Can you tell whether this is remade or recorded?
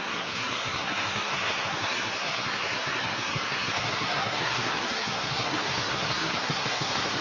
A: remade